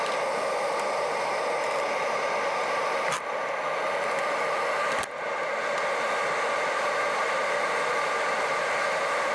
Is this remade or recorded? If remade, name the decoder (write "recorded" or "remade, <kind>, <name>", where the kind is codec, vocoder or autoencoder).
recorded